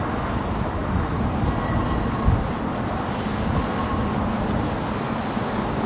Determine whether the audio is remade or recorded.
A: recorded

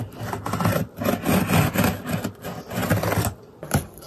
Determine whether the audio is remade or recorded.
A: recorded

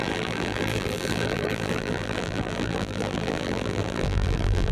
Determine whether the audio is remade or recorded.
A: remade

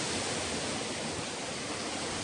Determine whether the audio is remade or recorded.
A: recorded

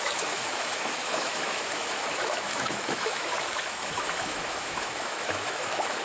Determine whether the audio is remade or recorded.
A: remade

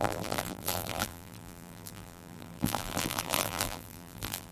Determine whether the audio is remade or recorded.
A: remade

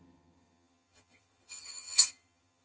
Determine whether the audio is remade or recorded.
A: remade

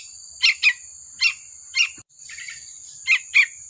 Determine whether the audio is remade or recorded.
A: recorded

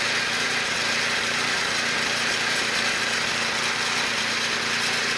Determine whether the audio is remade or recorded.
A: recorded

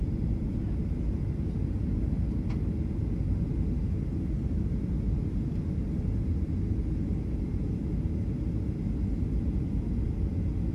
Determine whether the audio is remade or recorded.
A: recorded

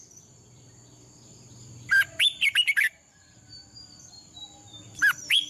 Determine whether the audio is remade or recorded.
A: remade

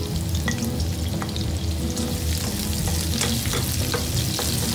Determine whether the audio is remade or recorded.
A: recorded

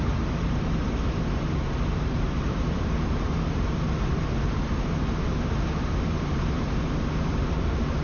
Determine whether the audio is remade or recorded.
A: remade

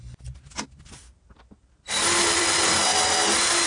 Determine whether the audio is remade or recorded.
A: remade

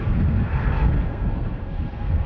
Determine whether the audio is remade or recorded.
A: remade